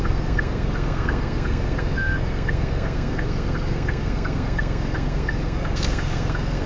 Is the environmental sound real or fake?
fake